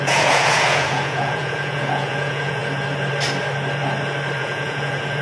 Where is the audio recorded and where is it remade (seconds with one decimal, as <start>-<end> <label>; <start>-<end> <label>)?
0.0-2.6 remade; 2.6-4.4 recorded; 4.4-5.2 remade